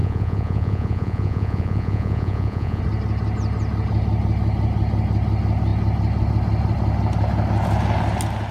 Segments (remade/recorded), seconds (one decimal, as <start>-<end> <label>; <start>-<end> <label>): 0.0-2.8 remade; 2.8-8.5 recorded